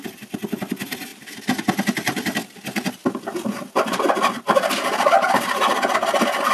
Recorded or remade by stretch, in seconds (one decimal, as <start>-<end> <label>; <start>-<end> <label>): 0.0-6.5 recorded

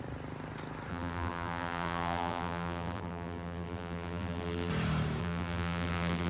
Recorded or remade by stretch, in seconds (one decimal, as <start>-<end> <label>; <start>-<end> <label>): 0.0-0.9 recorded; 0.9-4.7 remade; 4.7-5.2 recorded; 5.2-6.3 remade

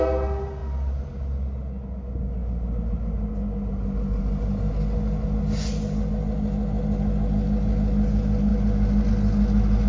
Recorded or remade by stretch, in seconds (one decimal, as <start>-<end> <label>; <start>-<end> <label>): 0.0-9.9 recorded

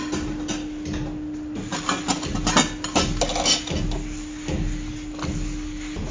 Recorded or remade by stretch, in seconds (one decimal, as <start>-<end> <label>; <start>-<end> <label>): 0.0-6.1 recorded

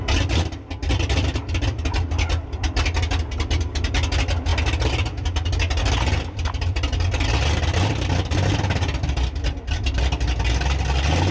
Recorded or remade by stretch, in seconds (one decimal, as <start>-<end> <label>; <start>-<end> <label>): 0.0-11.3 recorded

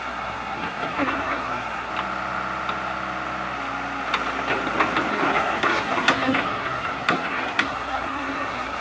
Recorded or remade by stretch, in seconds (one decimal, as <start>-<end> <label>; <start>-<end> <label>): 0.0-1.9 remade; 1.9-5.1 recorded; 5.1-8.8 remade